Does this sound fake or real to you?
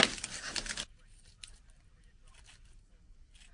real